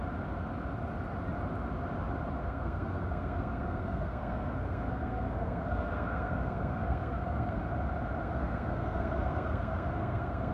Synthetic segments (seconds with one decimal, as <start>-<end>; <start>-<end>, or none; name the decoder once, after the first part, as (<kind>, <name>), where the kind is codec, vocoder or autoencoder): 2.4-7.6 (codec, SNAC); 8.2-10.5